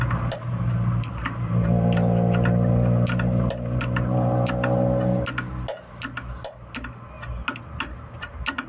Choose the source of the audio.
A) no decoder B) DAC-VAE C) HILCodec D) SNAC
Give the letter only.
A